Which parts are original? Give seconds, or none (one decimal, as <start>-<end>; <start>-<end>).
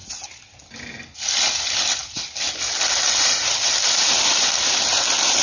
0.0-5.4